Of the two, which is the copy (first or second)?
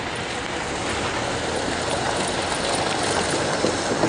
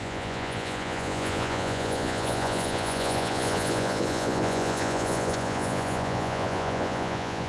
second